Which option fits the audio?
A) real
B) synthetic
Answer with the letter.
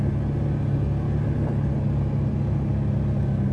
A